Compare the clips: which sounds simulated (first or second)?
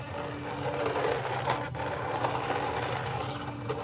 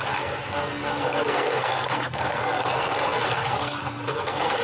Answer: second